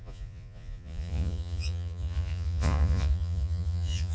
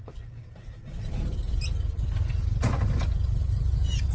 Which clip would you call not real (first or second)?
first